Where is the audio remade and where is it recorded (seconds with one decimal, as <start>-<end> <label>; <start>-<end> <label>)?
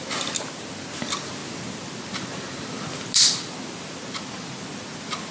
0.0-5.3 recorded